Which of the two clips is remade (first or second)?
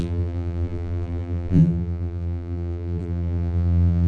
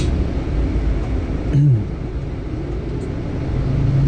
first